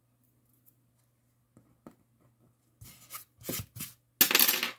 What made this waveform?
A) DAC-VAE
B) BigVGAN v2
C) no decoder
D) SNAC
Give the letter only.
C